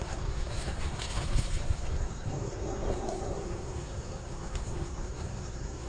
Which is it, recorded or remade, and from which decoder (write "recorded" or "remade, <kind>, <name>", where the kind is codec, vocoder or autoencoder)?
remade, codec, SNAC